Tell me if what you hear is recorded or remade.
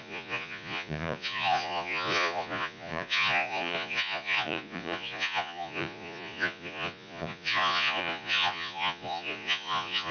remade